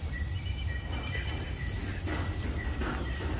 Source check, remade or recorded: recorded